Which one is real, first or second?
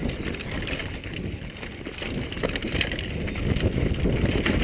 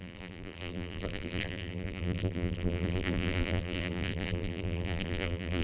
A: first